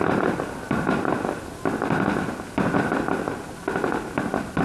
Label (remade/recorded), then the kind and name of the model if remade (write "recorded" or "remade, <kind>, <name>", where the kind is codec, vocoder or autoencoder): recorded